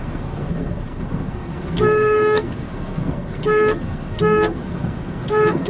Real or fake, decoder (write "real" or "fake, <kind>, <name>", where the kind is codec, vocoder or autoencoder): fake, codec, SNAC